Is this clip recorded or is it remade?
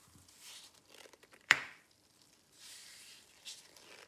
remade